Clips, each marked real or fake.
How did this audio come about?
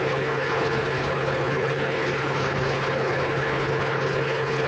fake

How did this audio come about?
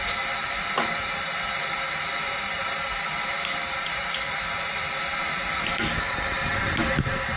real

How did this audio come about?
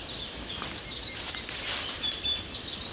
real